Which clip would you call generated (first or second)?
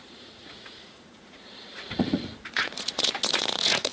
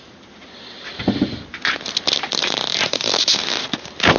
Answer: first